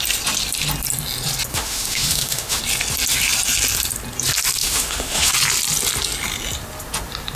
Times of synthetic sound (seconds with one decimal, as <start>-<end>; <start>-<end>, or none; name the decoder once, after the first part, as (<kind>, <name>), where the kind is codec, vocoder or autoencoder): 1.5-2.6 (autoencoder, DAC-VAE); 4.6-5.3